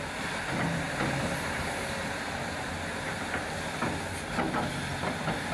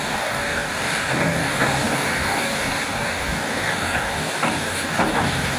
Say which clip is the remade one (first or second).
second